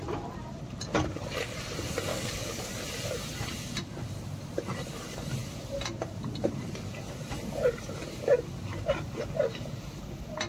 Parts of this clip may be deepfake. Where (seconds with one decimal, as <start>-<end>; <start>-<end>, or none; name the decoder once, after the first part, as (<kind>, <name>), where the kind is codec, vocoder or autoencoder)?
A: 2.1-2.7 (codec, DAC)